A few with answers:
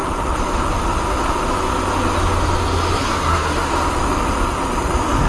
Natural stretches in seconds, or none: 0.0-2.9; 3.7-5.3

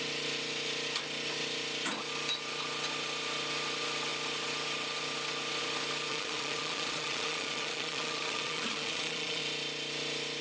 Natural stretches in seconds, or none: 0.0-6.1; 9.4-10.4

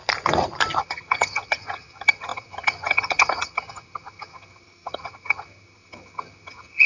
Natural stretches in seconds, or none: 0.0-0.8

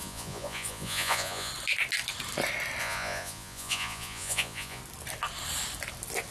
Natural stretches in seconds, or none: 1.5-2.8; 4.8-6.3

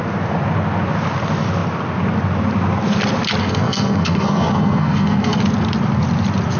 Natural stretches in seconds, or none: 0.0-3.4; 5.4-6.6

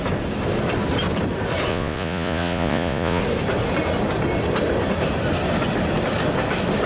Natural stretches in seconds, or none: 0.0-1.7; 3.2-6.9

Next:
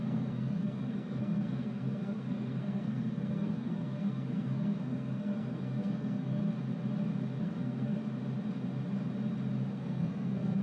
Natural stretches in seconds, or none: 6.4-7.4; 8.0-9.7

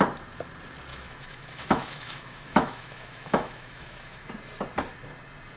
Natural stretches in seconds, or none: 0.0-0.9; 4.3-5.6